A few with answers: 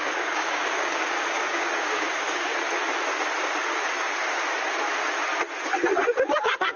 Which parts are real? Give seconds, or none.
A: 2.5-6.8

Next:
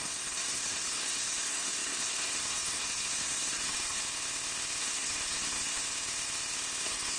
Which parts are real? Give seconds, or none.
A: 4.0-4.8; 5.8-6.8

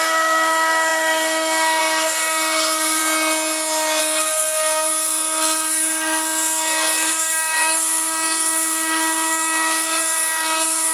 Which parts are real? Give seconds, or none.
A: 3.0-4.0